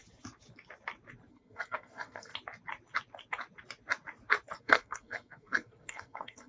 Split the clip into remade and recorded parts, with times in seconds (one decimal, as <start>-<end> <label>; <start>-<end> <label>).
0.0-1.3 recorded; 1.3-2.3 remade; 2.3-4.6 recorded; 4.6-6.5 remade